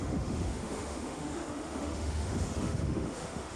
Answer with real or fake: fake